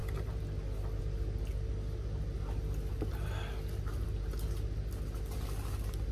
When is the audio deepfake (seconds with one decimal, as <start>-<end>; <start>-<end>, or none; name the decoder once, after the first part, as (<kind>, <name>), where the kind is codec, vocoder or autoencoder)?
none